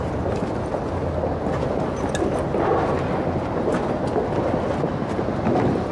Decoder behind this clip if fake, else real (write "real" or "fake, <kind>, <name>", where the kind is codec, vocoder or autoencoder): real